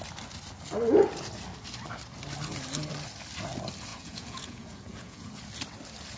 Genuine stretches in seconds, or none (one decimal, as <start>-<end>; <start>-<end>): 0.0-3.9; 5.4-6.2